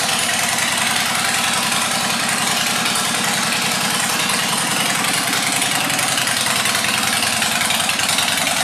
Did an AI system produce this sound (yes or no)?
no